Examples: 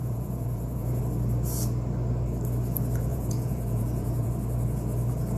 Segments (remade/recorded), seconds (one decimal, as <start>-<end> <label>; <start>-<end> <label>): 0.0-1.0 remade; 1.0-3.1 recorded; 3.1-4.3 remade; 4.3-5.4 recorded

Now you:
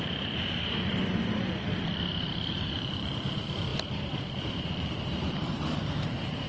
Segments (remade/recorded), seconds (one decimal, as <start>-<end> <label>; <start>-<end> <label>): 0.0-1.0 remade; 1.0-2.5 recorded; 2.5-3.7 remade; 3.7-4.6 recorded; 4.6-6.5 remade

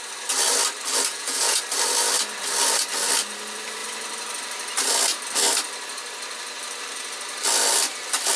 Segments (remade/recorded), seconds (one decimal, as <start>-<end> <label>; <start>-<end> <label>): 0.0-1.1 recorded; 1.1-1.6 remade; 1.6-8.4 recorded

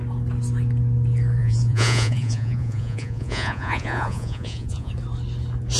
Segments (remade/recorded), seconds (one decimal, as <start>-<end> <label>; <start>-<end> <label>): 0.0-1.4 recorded; 1.4-4.9 remade; 4.9-5.8 recorded

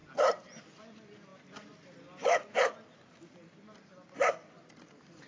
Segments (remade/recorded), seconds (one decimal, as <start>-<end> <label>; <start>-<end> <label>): 0.0-1.3 recorded; 1.3-4.5 remade; 4.5-5.3 recorded